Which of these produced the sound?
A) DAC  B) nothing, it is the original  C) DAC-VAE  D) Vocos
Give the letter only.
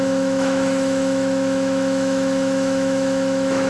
C